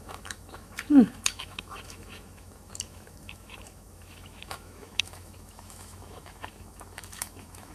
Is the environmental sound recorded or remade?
remade